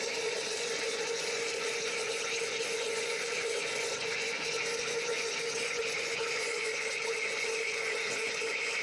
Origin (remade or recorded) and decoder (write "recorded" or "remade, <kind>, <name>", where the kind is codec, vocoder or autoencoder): remade, vocoder, Vocos